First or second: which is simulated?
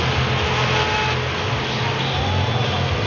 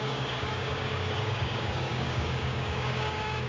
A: second